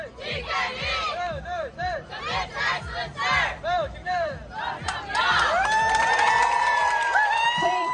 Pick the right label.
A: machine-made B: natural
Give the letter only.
A